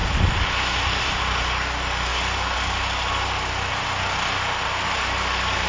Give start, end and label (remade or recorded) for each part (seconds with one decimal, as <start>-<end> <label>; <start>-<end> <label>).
0.0-5.7 recorded